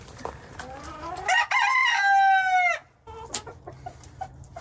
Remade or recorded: recorded